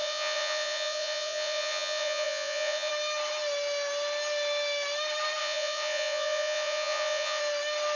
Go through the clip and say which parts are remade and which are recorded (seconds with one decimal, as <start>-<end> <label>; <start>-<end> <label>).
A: 0.0-2.9 remade; 2.9-5.4 recorded; 5.4-7.4 remade; 7.4-8.0 recorded